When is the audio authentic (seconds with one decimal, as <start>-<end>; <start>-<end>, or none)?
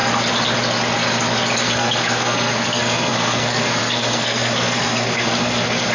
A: 0.0-1.6